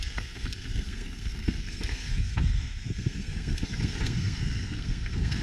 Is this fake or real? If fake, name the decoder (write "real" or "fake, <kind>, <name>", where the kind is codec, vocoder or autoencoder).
fake, codec, SNAC